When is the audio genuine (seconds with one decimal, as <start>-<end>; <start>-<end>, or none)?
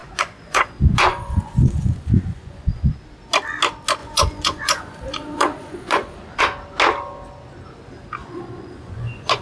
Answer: 3.0-4.0; 6.4-8.2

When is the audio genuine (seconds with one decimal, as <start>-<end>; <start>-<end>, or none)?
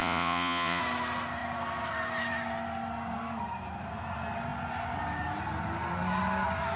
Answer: 0.8-6.8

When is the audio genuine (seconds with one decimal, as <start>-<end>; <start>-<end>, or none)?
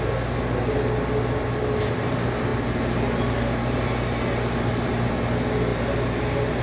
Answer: 0.0-6.6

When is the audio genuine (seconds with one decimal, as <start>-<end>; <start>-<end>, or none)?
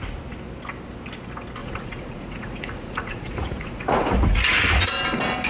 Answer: 0.0-1.6; 4.9-5.5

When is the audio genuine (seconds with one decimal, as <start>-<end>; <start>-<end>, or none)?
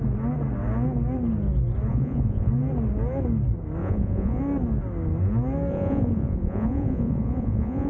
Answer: 0.0-1.9; 2.5-3.8; 4.4-5.7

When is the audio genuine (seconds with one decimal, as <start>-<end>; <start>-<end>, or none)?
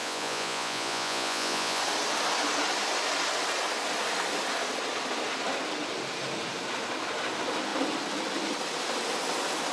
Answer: 1.8-9.7